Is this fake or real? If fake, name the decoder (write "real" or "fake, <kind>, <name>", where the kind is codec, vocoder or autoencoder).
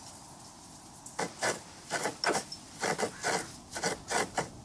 real